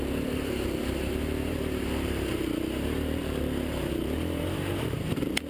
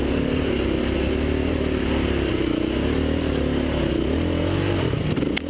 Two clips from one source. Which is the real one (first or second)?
second